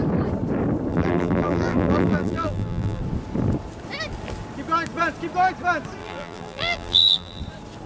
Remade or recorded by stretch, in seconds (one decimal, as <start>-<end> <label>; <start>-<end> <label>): 0.0-0.9 recorded; 0.9-3.0 remade; 3.0-6.0 recorded; 6.0-7.4 remade; 7.4-7.9 recorded